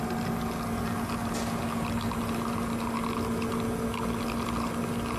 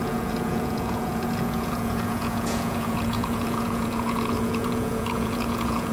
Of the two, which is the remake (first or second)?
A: second